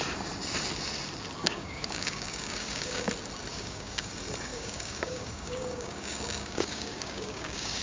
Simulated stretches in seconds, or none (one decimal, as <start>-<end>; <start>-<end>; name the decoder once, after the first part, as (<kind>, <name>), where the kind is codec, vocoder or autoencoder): 1.4-3.1 (codec, DAC); 3.5-4.1; 4.5-7.8